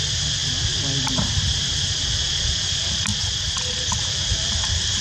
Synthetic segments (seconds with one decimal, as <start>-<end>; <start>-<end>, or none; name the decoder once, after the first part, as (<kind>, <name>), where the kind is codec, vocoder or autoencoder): none